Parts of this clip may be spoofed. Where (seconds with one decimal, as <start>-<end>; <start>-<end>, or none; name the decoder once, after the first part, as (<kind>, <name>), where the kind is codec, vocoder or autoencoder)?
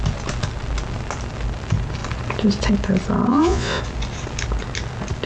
3.3-3.8 (vocoder, Vocos)